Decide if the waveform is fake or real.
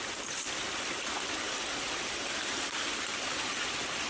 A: real